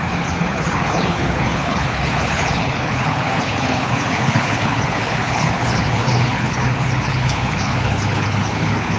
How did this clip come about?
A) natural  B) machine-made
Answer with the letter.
B